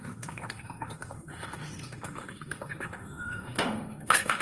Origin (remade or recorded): remade